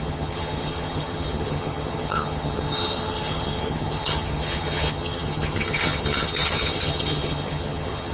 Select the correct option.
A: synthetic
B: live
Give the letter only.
A